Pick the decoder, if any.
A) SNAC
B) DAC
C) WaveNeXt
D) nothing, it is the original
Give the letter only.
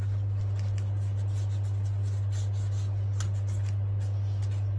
D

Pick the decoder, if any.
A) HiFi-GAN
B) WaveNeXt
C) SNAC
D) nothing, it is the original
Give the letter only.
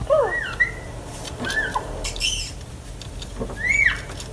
D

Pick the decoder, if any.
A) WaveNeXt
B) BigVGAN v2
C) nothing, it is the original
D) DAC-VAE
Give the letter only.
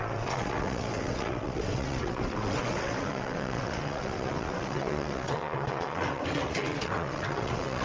A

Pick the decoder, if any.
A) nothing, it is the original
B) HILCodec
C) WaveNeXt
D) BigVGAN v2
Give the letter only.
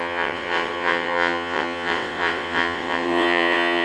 C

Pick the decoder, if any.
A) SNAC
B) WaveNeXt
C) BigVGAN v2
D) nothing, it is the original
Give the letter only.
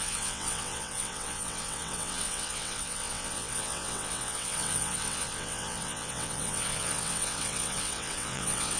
B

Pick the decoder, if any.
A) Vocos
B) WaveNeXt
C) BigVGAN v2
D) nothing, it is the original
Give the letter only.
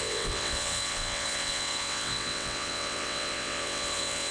B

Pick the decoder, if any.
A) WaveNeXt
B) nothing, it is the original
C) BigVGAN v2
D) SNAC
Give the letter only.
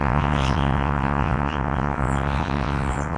A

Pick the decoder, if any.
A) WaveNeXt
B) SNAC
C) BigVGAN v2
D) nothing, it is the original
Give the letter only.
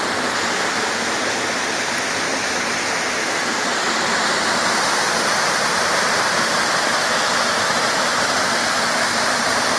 D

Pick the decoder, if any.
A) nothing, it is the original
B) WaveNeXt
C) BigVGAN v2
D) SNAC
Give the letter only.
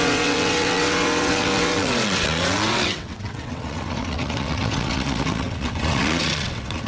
B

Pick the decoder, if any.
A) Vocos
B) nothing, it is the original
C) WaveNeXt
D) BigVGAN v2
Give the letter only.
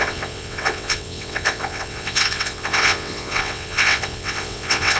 C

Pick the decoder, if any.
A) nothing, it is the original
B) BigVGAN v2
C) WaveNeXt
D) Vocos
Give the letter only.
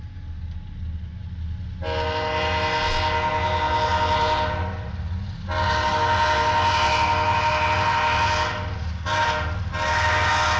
A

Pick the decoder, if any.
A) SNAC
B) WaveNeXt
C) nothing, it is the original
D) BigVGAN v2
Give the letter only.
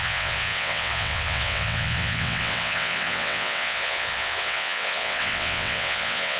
B